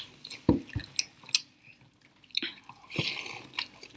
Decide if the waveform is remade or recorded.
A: recorded